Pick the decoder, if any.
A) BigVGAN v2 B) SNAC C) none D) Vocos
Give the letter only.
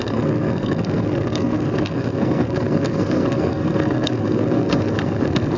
B